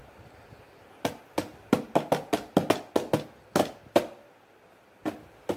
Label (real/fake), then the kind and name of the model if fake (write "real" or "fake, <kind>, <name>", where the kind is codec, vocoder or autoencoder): real